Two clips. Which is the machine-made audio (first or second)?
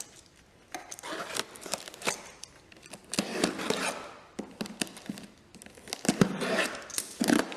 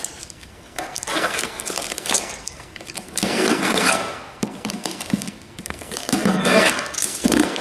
second